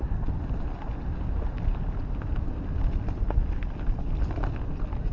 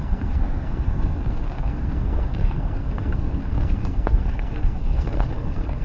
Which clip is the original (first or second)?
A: first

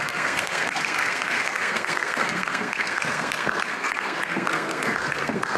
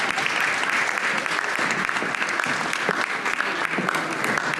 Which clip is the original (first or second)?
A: second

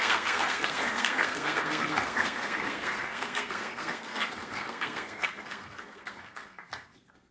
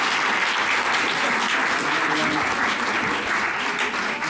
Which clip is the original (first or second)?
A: second